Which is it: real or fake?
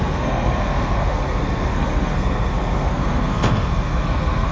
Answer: fake